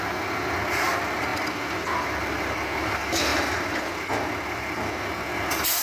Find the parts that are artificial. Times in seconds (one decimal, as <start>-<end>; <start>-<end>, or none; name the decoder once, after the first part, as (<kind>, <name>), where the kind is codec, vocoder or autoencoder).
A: none